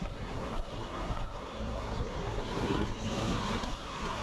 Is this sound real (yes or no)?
no